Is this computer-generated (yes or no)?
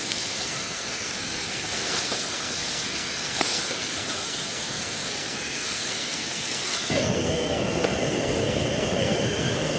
yes